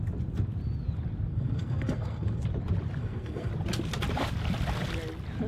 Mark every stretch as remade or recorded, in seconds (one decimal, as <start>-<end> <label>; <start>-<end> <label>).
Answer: 0.0-1.3 recorded; 1.3-2.4 remade; 2.4-3.0 recorded; 3.0-3.5 remade; 3.5-5.5 recorded